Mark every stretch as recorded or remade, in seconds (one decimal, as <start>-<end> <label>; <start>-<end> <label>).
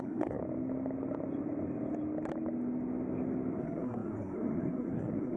0.0-0.4 remade; 0.4-3.6 recorded; 3.6-5.4 remade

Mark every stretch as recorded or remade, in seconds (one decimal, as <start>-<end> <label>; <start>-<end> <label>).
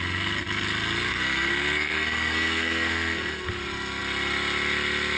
0.0-1.1 recorded; 1.1-3.5 remade; 3.5-5.2 recorded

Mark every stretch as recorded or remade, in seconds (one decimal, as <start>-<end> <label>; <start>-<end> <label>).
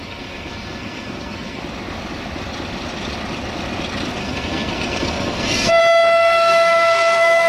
0.0-1.6 remade; 1.6-4.2 recorded; 4.2-5.8 remade; 5.8-6.2 recorded; 6.2-7.5 remade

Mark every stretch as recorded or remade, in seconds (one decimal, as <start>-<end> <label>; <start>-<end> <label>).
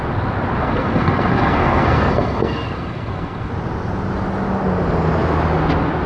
0.0-0.6 recorded; 0.6-3.5 remade; 3.5-6.1 recorded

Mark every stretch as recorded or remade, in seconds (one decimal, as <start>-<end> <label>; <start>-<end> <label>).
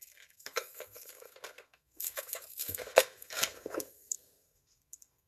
0.0-5.3 remade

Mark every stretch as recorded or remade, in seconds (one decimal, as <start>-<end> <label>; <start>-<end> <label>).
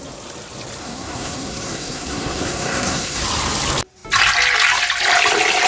0.0-0.8 recorded; 0.8-3.2 remade; 3.2-5.7 recorded